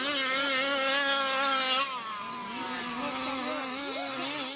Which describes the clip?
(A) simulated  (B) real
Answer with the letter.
B